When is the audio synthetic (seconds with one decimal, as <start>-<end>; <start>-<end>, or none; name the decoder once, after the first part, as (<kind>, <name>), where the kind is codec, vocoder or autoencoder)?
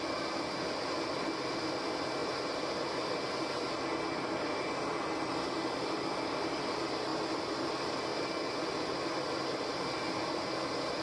none